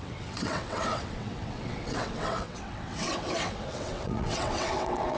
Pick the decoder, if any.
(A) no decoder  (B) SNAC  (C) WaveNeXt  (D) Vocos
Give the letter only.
C